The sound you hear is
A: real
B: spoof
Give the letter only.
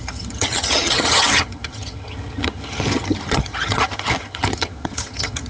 B